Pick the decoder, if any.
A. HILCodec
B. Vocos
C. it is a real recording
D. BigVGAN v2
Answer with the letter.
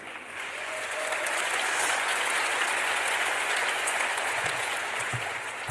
B